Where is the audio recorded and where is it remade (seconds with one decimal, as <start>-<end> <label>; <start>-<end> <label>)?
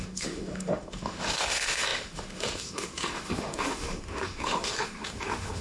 0.0-5.6 remade